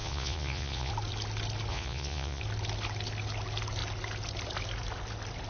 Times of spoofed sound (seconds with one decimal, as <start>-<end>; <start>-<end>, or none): 0.0-0.9; 1.7-2.4